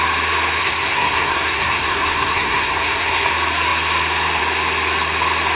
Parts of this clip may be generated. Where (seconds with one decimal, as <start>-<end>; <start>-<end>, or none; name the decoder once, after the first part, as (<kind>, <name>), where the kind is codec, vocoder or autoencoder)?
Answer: 0.6-3.3 (codec, SNAC)